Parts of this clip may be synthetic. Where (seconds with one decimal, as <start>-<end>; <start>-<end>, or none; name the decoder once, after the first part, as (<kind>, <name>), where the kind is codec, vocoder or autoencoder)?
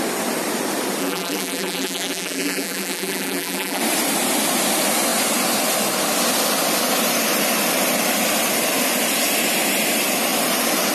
1.0-3.8 (vocoder, BigVGAN v2)